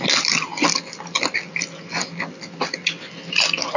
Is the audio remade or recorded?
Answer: recorded